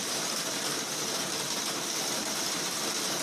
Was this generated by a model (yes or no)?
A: yes